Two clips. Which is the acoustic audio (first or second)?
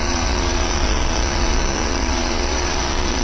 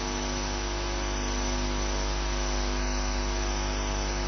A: second